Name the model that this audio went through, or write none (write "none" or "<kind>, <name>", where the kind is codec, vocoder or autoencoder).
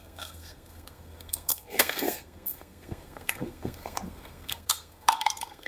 codec, SNAC